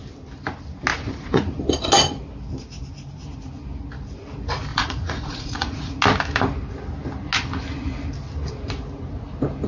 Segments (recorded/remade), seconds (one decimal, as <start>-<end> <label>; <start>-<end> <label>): 0.0-0.9 recorded; 0.9-1.6 remade; 1.6-4.7 recorded; 4.7-5.9 remade; 5.9-9.7 recorded